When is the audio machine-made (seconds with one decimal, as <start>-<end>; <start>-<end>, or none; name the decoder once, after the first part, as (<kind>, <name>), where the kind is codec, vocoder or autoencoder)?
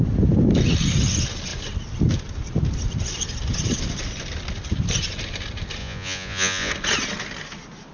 5.8-6.7 (vocoder, Vocos)